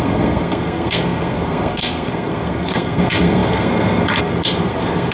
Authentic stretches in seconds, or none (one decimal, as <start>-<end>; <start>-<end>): none